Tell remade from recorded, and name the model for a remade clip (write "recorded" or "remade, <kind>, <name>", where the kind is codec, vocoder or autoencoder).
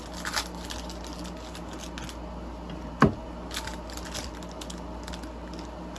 recorded